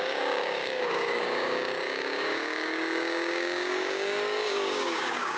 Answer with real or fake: fake